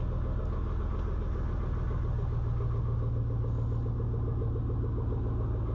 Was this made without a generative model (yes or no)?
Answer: yes